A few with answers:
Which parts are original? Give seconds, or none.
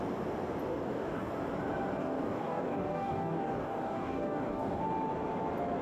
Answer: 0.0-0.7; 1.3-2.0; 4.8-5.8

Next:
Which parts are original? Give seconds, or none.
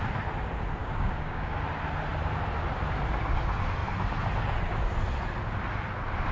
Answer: 0.0-0.8; 1.5-6.3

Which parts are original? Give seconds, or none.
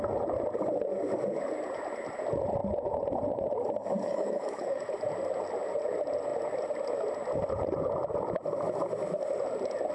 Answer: 0.0-4.1; 4.9-9.9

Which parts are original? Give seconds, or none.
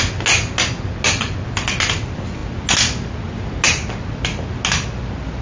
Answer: 0.0-5.4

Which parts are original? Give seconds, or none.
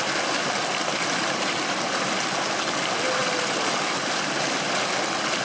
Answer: 0.0-5.4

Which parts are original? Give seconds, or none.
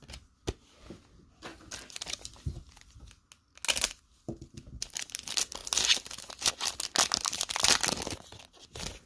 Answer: 0.0-9.1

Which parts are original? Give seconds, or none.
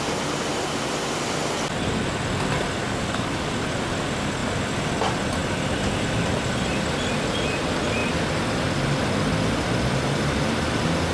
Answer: 0.0-2.8; 3.5-11.1